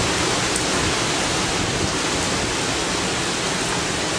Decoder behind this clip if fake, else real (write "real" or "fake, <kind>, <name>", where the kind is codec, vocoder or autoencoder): real